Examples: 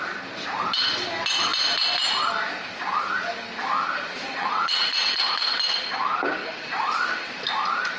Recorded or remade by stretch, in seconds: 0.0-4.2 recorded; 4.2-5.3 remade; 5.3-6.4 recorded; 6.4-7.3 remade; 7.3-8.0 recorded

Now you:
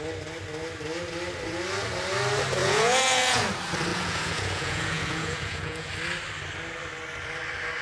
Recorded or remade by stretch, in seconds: 0.0-2.6 recorded; 2.6-3.4 remade; 3.4-3.9 recorded; 3.9-5.9 remade; 5.9-7.8 recorded

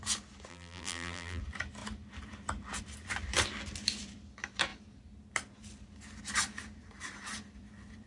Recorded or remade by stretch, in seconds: 0.0-0.5 recorded; 0.5-1.4 remade; 1.4-8.1 recorded

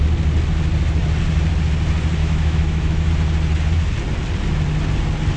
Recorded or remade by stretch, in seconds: 0.0-2.2 recorded; 2.2-3.1 remade; 3.1-5.4 recorded

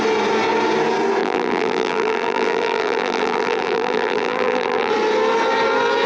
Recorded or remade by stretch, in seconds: 0.0-1.2 recorded; 1.2-4.9 remade; 4.9-6.1 recorded

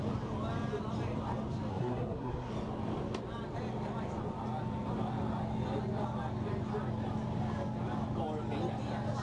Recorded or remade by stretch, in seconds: 0.0-1.7 recorded; 1.7-2.5 remade; 2.5-9.2 recorded